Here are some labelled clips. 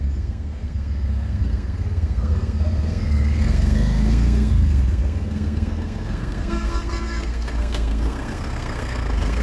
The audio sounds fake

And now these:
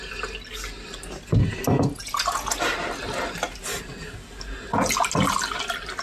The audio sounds real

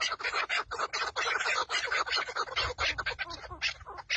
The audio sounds real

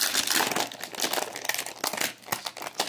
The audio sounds real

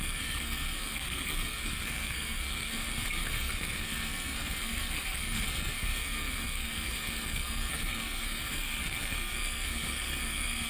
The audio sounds fake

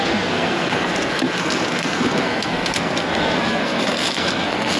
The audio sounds fake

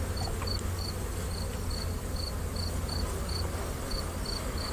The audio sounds real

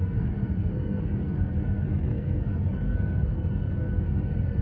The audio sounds fake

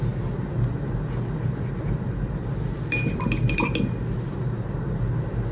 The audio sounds real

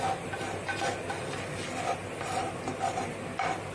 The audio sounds real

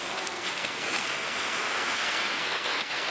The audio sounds fake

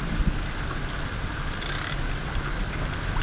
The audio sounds real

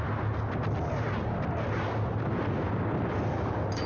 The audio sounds real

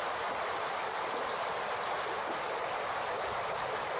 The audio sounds real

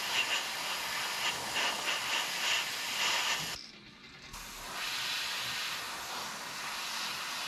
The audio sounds real